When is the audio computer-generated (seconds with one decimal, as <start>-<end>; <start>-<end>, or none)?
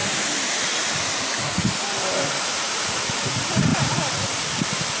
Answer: 3.7-5.0